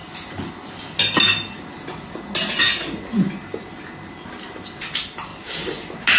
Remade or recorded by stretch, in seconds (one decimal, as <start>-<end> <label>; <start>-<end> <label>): 0.0-6.2 recorded